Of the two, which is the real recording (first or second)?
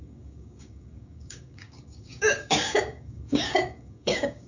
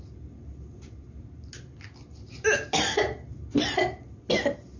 second